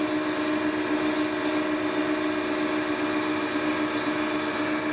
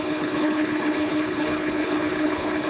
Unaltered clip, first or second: first